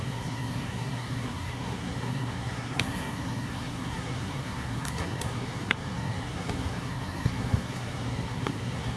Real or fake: fake